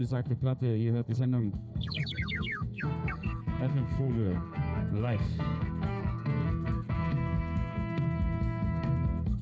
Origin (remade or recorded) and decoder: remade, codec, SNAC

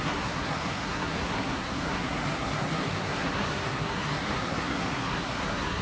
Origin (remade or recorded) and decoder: remade, codec, SNAC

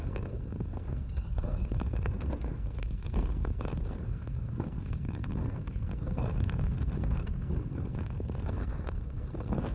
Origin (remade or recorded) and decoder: remade, codec, SNAC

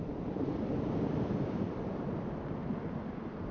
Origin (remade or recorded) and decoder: remade, vocoder, BigVGAN v2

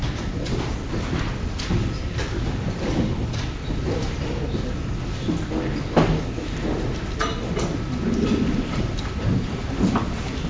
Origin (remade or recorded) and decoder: recorded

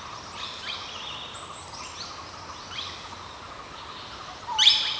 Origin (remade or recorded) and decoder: recorded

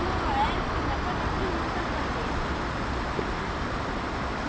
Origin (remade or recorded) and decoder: recorded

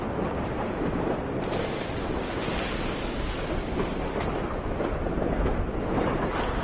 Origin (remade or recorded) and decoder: recorded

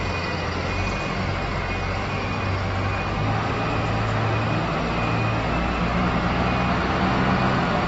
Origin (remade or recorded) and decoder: recorded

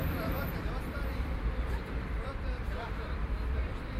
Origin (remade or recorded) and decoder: remade, vocoder, BigVGAN v2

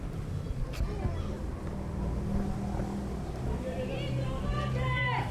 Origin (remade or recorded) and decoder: recorded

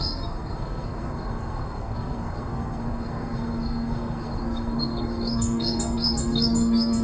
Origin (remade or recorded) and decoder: remade, codec, SNAC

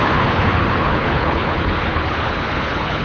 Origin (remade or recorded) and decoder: remade, codec, HILCodec